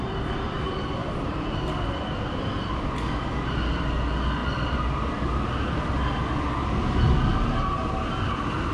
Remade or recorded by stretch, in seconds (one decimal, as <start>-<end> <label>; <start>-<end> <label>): 0.0-8.7 recorded